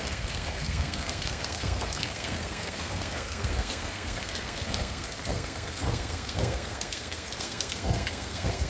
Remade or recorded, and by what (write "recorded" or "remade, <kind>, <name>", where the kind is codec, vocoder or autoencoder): remade, codec, SNAC